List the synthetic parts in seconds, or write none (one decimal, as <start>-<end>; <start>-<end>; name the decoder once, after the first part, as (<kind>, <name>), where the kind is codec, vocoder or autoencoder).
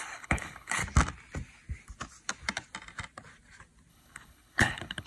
0.0-0.8 (codec, HILCodec); 3.9-5.1